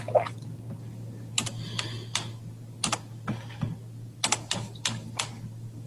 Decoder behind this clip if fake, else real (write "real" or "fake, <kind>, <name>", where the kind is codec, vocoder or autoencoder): fake, vocoder, BigVGAN v2